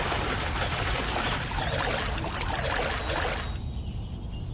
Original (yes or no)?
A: yes